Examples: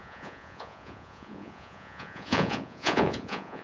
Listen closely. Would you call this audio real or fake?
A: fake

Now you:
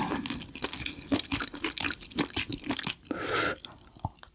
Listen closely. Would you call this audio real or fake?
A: real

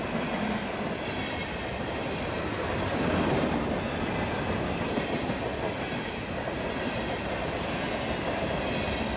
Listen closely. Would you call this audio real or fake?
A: real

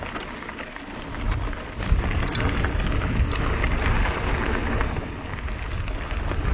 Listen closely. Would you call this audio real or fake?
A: real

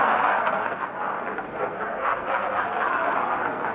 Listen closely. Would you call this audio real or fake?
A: fake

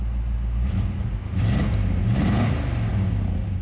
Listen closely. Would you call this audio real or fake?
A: real